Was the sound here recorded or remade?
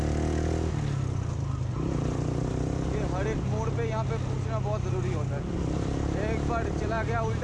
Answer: recorded